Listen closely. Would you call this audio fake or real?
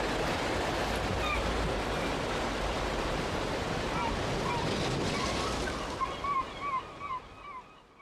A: real